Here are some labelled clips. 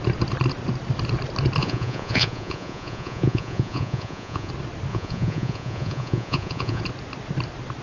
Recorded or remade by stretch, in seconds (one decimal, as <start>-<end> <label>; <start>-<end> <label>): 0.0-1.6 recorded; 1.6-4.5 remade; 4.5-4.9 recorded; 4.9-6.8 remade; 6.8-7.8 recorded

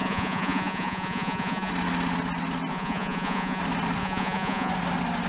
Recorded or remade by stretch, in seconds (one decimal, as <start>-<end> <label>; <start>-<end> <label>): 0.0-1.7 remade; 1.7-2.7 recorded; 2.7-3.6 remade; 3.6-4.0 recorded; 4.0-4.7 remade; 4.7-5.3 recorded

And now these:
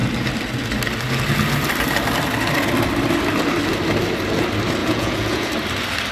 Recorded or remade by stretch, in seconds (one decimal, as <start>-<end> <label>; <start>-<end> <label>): 0.0-4.8 recorded; 4.8-5.5 remade; 5.5-6.1 recorded

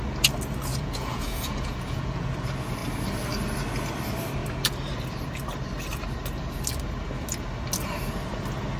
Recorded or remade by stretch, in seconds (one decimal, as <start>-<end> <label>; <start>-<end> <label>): 0.0-0.7 recorded; 0.7-2.2 remade; 2.2-8.8 recorded

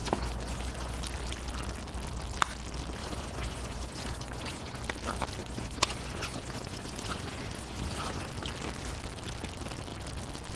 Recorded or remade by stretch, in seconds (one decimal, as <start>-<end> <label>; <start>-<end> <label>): 0.0-1.0 remade; 1.0-3.0 recorded; 3.0-4.8 remade; 4.8-5.4 recorded; 5.4-8.3 remade; 8.3-10.6 recorded

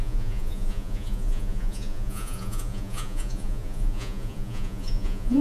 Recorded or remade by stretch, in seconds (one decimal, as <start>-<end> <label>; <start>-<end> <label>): 0.0-5.4 remade

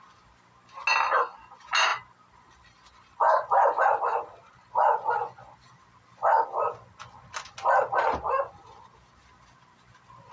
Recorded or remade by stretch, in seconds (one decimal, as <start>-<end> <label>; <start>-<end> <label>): 0.0-10.3 recorded

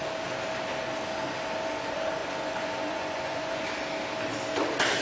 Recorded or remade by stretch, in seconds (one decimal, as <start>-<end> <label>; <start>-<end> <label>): 0.0-2.2 recorded; 2.2-3.6 remade; 3.6-5.0 recorded